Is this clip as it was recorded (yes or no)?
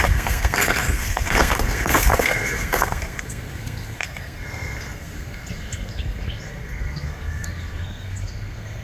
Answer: no